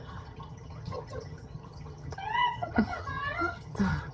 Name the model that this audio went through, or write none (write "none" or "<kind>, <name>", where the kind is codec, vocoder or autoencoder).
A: vocoder, HiFi-GAN